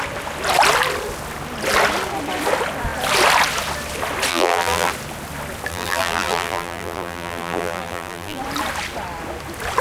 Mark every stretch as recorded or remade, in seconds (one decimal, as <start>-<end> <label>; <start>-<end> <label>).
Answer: 0.0-4.3 recorded; 4.3-4.9 remade; 4.9-5.7 recorded; 5.7-8.4 remade; 8.4-9.8 recorded